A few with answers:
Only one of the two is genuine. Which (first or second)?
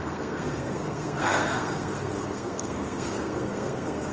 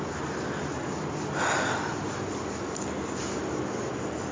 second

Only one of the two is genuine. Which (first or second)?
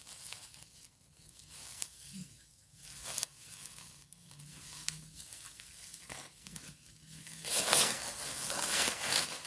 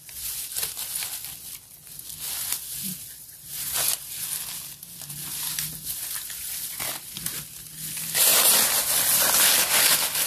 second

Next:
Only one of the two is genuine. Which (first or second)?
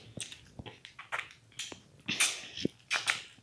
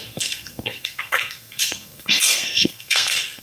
first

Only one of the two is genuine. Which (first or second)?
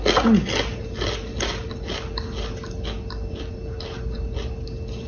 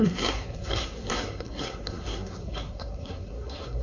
first